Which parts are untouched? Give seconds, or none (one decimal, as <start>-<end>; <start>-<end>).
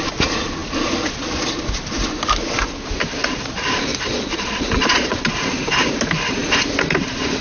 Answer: 0.0-3.9; 5.2-7.4